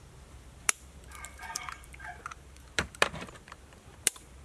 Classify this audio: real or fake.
fake